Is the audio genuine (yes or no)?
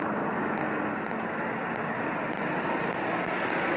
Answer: yes